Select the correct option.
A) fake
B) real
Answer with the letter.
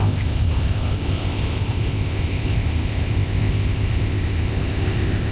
A